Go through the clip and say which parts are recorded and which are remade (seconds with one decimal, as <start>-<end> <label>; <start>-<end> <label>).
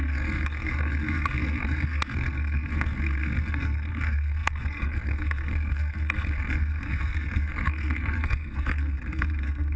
0.0-9.8 remade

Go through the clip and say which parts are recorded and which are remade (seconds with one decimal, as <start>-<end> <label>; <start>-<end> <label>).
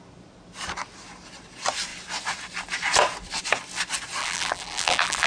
0.0-4.2 recorded; 4.2-5.3 remade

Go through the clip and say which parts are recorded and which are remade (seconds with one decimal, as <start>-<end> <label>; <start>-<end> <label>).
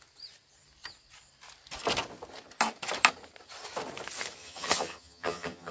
0.0-4.4 recorded; 4.4-5.7 remade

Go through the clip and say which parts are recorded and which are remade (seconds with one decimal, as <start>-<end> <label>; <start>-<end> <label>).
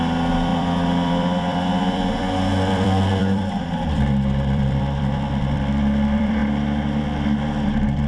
0.0-6.4 remade; 6.4-8.1 recorded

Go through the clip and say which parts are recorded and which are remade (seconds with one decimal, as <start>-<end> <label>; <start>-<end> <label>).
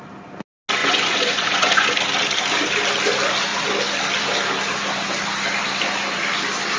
0.0-0.8 recorded; 0.8-1.9 remade; 1.9-6.8 recorded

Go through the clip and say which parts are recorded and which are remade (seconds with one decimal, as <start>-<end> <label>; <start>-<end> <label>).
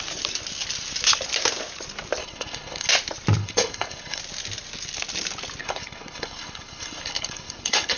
0.0-2.2 recorded; 2.2-2.9 remade; 2.9-3.4 recorded; 3.4-4.2 remade; 4.2-5.6 recorded; 5.6-8.0 remade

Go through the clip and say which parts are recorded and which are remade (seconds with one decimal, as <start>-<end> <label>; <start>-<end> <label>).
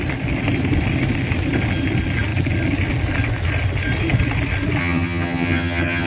0.0-4.8 recorded; 4.8-6.1 remade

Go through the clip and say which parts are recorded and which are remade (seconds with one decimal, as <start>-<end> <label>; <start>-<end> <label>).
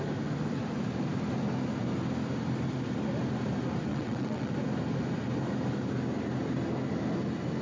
0.0-3.9 recorded; 3.9-4.5 remade; 4.5-7.6 recorded